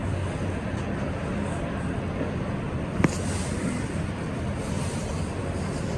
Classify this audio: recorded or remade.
recorded